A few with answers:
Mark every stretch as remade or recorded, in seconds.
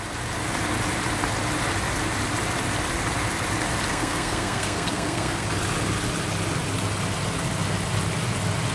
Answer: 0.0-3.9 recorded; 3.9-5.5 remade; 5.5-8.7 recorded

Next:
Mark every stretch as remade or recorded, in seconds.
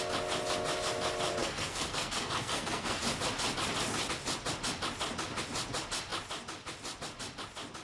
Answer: 0.0-1.4 recorded; 1.4-3.0 remade; 3.0-7.8 recorded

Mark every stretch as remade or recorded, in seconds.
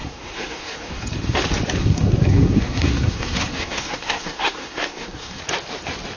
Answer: 0.0-1.0 remade; 1.0-1.8 recorded; 1.8-5.4 remade; 5.4-6.2 recorded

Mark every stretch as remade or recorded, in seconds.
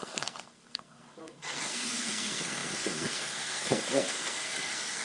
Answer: 0.0-5.0 remade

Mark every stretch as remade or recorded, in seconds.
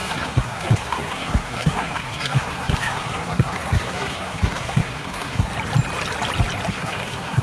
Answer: 0.0-5.5 remade; 5.5-6.7 recorded; 6.7-7.4 remade